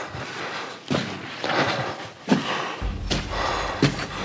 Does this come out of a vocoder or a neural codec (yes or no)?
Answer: no